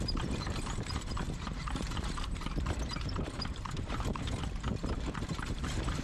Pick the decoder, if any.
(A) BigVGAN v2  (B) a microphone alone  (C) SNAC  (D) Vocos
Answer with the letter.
A